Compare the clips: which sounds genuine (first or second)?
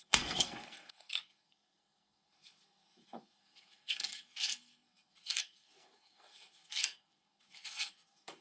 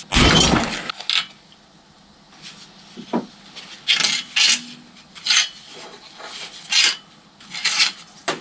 second